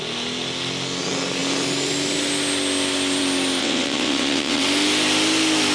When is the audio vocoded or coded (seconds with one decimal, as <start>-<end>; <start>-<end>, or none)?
3.6-4.6